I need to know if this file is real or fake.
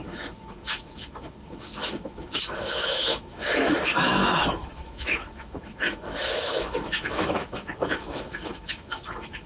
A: fake